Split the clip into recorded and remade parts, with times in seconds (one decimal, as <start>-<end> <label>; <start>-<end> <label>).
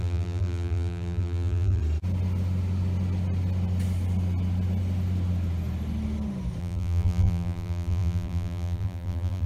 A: 0.0-1.8 remade; 1.8-6.6 recorded; 6.6-9.5 remade